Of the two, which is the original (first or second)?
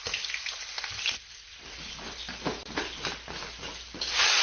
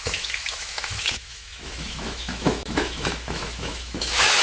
first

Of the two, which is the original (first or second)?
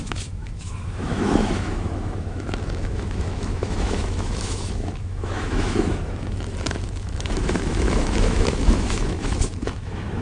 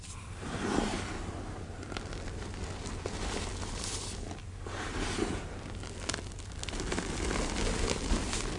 second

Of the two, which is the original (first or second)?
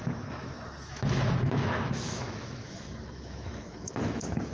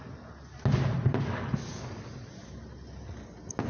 second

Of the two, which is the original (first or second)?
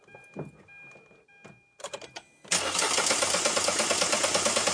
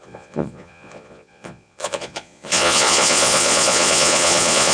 first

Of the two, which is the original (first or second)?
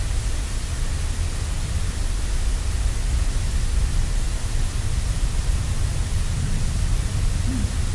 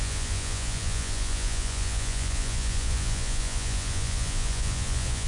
first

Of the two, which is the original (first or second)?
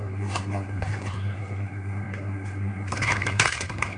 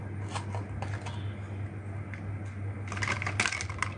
second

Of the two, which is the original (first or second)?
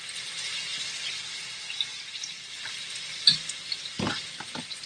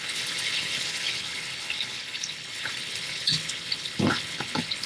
first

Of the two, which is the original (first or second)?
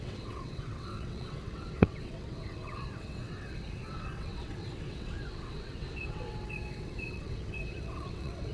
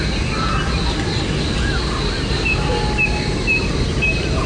second